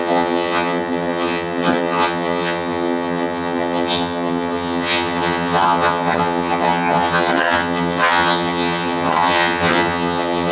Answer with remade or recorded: remade